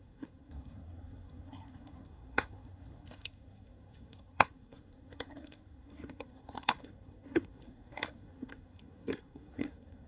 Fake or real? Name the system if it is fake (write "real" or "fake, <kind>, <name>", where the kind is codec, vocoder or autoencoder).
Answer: fake, codec, SNAC